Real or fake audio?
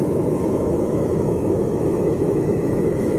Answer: fake